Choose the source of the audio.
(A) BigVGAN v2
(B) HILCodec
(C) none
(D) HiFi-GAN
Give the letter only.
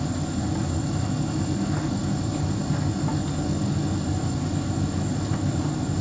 C